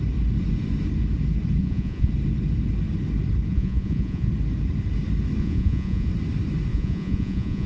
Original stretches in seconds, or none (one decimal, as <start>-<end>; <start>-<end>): 0.0-1.6; 2.1-3.5; 4.3-5.4; 6.1-6.7